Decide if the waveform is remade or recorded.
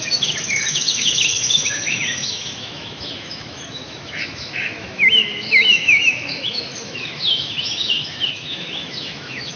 remade